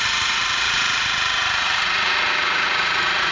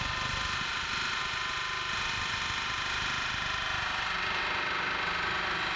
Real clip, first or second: second